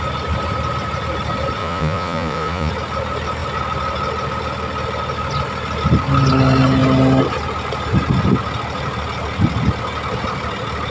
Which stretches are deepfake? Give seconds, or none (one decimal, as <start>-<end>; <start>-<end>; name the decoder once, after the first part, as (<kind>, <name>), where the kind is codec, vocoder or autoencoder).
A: 1.6-2.7 (vocoder, Vocos)